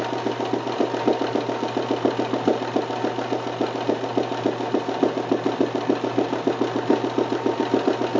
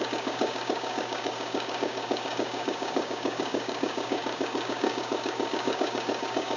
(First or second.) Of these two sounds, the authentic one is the first